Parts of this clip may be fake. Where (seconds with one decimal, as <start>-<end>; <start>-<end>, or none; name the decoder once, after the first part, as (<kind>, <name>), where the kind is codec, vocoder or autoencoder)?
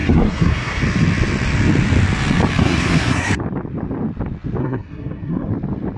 0.0-0.8 (codec, SNAC); 2.6-3.4; 4.6-5.5